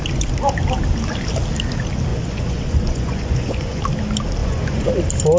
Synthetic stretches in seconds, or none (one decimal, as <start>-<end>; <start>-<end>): 2.1-3.8; 4.4-4.9